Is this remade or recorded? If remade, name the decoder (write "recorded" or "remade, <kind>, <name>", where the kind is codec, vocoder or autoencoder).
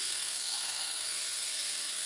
remade, codec, SNAC